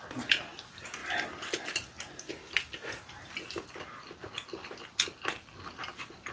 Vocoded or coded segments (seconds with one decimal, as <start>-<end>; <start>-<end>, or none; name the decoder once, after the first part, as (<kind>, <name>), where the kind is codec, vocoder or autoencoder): none